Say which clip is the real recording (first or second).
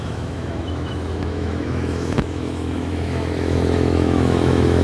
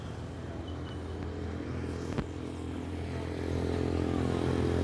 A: second